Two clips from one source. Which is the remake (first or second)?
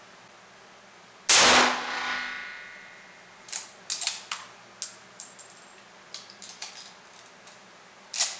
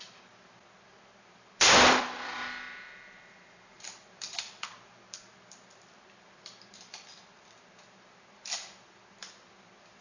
second